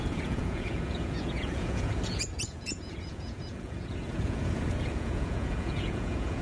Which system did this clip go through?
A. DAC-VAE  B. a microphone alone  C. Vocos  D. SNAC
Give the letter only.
C